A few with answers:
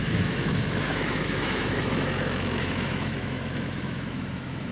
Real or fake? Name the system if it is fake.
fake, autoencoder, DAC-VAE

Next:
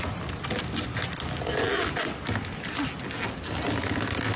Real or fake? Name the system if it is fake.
real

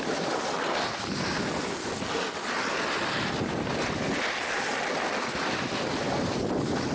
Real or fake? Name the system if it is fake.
real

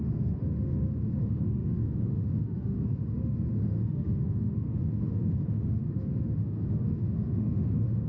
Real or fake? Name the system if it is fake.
fake, autoencoder, DAC-VAE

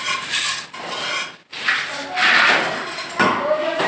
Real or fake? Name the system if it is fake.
real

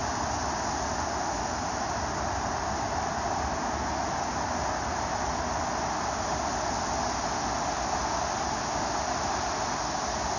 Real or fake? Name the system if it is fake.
real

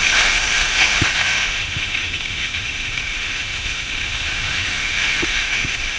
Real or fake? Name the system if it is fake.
fake, autoencoder, DAC-VAE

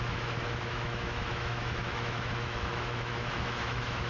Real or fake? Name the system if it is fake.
fake, autoencoder, DAC-VAE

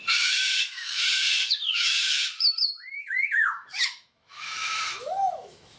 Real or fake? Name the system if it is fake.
fake, autoencoder, DAC-VAE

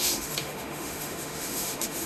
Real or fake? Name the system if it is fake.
fake, autoencoder, DAC-VAE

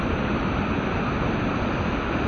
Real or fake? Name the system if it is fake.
real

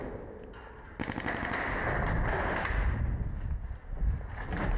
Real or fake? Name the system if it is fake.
real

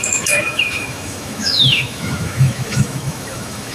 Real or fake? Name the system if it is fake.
fake, autoencoder, DAC-VAE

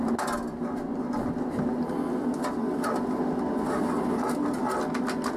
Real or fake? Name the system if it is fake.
real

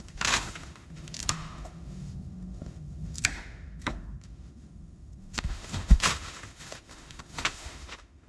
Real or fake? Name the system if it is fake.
fake, autoencoder, DAC-VAE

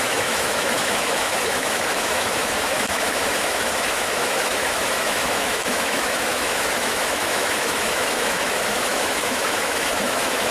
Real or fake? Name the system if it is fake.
fake, autoencoder, DAC-VAE